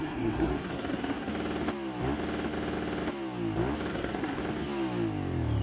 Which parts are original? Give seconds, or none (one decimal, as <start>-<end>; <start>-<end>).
1.3-3.9; 4.4-5.6